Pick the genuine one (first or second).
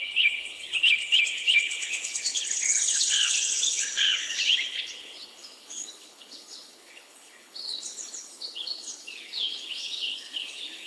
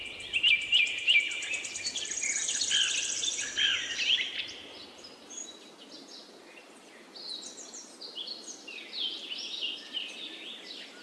second